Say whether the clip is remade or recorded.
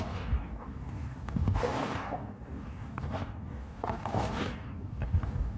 remade